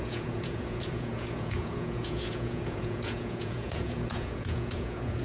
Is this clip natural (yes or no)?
no